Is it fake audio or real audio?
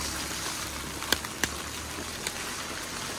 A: real